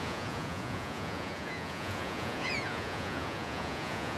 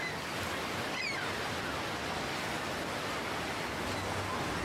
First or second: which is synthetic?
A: first